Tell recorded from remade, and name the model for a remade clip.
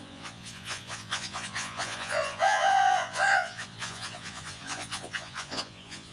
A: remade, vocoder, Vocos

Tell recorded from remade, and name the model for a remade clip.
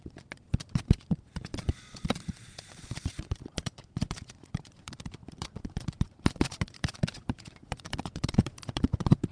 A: remade, vocoder, Vocos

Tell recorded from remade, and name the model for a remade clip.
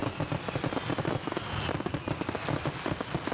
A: recorded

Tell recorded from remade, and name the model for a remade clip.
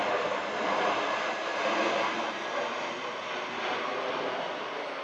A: recorded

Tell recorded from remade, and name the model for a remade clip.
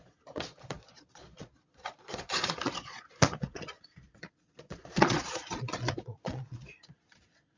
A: remade, vocoder, Vocos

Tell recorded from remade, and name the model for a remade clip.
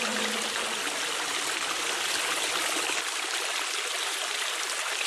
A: recorded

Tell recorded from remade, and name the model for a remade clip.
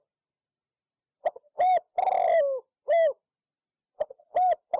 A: recorded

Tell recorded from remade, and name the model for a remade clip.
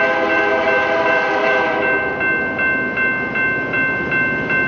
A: recorded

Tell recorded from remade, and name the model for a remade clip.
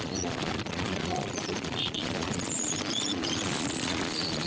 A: remade, vocoder, Vocos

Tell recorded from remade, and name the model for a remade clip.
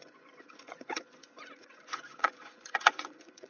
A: remade, vocoder, Vocos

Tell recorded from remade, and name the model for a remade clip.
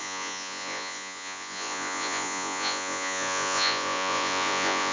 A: remade, vocoder, Vocos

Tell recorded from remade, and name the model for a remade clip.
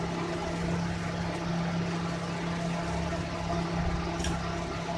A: recorded